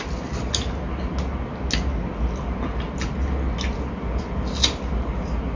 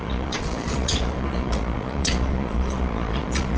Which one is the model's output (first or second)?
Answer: second